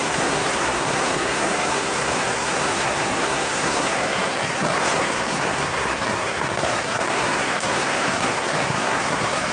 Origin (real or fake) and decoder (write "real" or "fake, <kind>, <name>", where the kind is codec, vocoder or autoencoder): fake, codec, SNAC